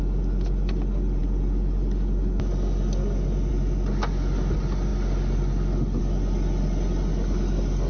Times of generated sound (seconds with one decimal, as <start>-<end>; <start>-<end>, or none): none